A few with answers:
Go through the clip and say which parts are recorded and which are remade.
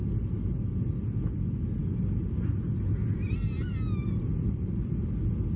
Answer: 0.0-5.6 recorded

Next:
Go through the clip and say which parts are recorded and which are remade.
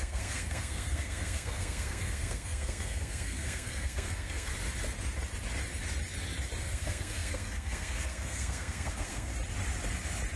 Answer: 0.0-4.5 remade; 4.5-6.6 recorded; 6.6-9.3 remade; 9.3-10.4 recorded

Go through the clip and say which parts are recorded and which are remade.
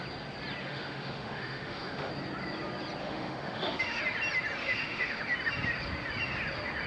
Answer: 0.0-0.6 recorded; 0.6-2.1 remade; 2.1-3.0 recorded; 3.0-4.0 remade; 4.0-4.6 recorded; 4.6-5.2 remade; 5.2-6.9 recorded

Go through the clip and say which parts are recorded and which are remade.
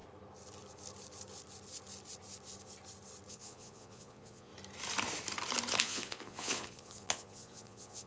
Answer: 0.0-3.3 recorded; 3.3-4.5 remade; 4.5-5.8 recorded; 5.8-8.1 remade